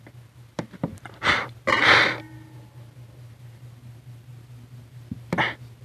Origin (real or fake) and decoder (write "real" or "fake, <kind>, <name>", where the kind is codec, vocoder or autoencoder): fake, vocoder, BigVGAN v2